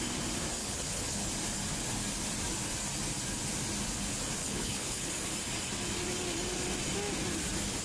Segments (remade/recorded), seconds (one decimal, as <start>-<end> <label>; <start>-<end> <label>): 0.0-0.6 recorded; 0.6-1.3 remade; 1.3-4.4 recorded; 4.4-5.1 remade; 5.1-7.8 recorded